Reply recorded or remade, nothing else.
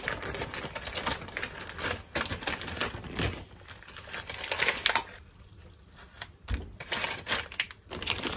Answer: recorded